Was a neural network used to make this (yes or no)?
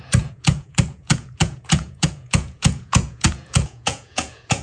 yes